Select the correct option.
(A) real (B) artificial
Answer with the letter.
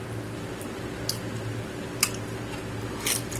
A